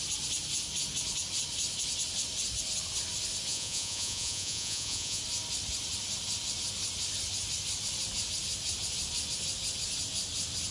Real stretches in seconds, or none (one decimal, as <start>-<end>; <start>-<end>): 0.0-3.5; 5.2-10.7